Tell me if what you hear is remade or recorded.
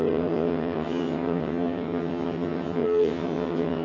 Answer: remade